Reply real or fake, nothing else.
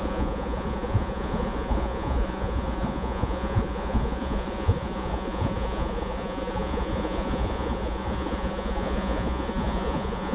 fake